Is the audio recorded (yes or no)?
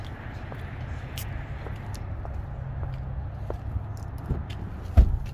yes